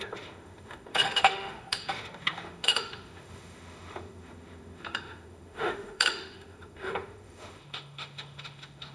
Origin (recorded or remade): remade